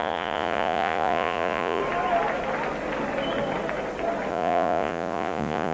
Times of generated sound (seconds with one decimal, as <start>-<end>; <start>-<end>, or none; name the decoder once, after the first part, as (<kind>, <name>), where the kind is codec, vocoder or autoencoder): 0.0-1.8 (vocoder, Vocos); 4.3-5.7